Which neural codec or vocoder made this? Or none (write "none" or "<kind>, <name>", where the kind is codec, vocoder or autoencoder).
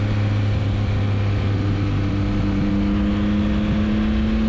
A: none